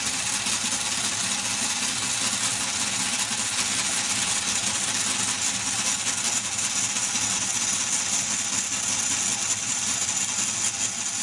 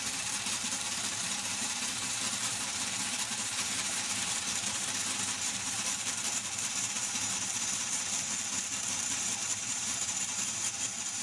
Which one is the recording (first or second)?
first